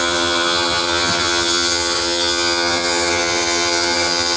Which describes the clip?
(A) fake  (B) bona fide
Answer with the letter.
A